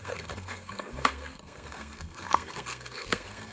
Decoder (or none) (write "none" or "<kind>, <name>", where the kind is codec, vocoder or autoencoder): codec, SNAC